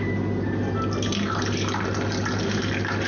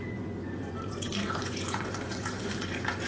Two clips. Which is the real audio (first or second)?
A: first